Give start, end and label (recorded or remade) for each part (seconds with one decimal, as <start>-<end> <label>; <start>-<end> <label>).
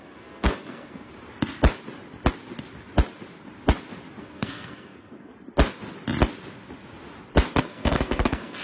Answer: 0.0-1.1 remade; 1.1-4.2 recorded; 4.2-5.3 remade; 5.3-7.6 recorded; 7.6-8.6 remade